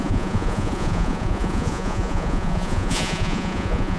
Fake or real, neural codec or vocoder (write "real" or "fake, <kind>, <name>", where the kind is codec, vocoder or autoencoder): fake, vocoder, Vocos